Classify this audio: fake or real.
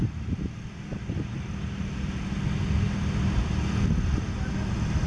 real